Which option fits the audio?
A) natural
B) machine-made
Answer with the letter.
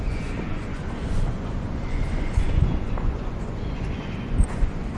B